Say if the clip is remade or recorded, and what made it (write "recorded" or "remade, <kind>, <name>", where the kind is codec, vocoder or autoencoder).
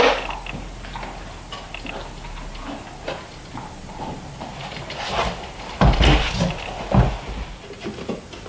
recorded